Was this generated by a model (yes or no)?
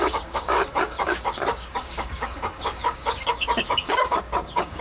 yes